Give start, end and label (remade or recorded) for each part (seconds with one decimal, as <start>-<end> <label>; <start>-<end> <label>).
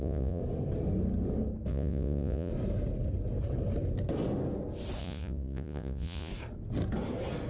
0.0-0.4 remade; 0.4-1.7 recorded; 1.7-2.5 remade; 2.5-5.0 recorded; 5.0-6.3 remade; 6.3-7.5 recorded